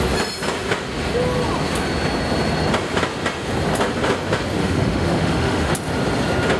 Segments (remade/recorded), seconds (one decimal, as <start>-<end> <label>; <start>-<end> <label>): 0.0-4.6 recorded; 4.6-5.7 remade; 5.7-6.6 recorded